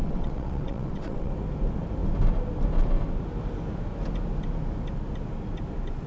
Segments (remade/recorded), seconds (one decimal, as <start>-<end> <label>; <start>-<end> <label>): 0.0-1.3 remade; 1.3-6.1 recorded